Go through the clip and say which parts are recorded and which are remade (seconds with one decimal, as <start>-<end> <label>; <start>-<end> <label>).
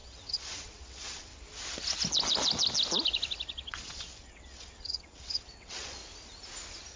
0.0-1.3 remade; 1.3-3.7 recorded; 3.7-6.0 remade; 6.0-7.0 recorded